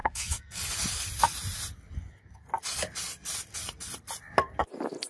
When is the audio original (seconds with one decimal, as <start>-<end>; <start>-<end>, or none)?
0.6-5.1